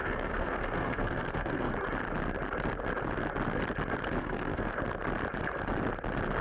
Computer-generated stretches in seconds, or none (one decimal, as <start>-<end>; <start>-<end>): 0.0-1.7; 4.2-4.8